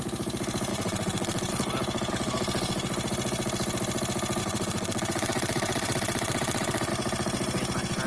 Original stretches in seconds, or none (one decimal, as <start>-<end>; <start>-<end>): 0.0-0.7; 1.5-4.4; 6.9-8.1